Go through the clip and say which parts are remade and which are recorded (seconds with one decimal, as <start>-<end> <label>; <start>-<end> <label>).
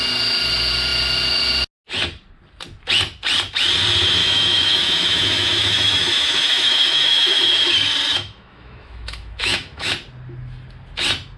0.0-4.2 recorded; 4.2-7.5 remade; 7.5-8.1 recorded; 8.1-9.9 remade; 9.9-11.4 recorded